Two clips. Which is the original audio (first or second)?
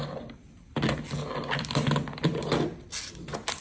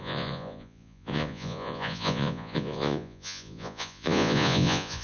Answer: first